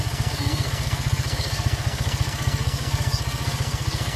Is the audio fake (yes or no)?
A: yes